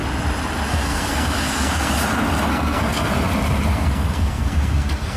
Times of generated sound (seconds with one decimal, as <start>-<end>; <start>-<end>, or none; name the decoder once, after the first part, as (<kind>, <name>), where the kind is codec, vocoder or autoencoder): 0.7-2.0 (codec, SNAC); 2.5-3.1; 3.7-5.2